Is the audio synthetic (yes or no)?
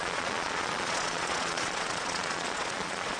yes